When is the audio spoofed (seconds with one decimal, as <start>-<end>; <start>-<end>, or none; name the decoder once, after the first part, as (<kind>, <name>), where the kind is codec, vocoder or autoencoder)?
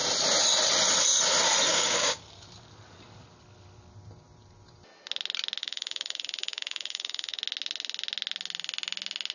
1.7-2.2 (codec, DAC); 5.6-7.4